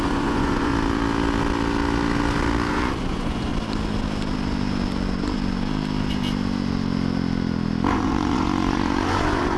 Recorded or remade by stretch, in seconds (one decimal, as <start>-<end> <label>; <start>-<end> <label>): 0.0-0.7 remade; 0.7-2.7 recorded; 2.7-3.5 remade; 3.5-7.9 recorded; 7.9-9.6 remade